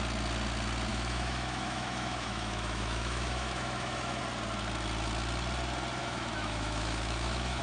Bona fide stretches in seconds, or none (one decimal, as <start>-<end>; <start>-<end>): 0.0-0.9; 4.2-6.0